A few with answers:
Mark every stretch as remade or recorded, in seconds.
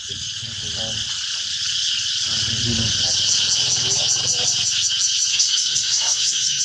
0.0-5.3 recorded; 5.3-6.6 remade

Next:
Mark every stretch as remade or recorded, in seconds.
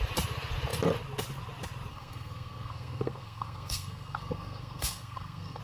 0.0-1.9 recorded; 1.9-5.6 remade